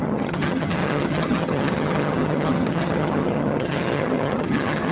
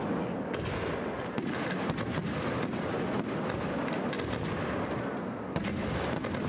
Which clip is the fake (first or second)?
first